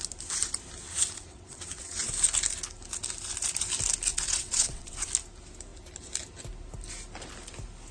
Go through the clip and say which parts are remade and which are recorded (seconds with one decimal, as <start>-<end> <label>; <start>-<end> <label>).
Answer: 0.0-0.9 recorded; 0.9-2.1 remade; 2.1-4.1 recorded; 4.1-5.1 remade; 5.1-7.9 recorded